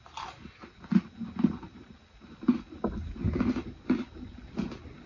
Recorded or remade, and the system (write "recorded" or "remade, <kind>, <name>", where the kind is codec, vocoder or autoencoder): recorded